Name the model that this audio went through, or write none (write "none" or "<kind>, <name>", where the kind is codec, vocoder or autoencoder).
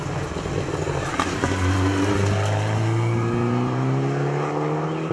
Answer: none